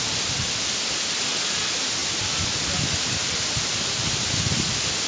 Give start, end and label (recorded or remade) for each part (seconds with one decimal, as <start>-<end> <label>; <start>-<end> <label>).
0.0-5.1 recorded